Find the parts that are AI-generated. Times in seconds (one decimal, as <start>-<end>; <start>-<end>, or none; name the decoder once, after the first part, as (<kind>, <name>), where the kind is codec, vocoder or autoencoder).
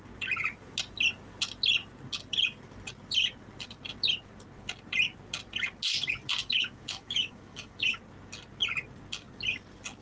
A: 6.4-8.0 (autoencoder, DAC-VAE)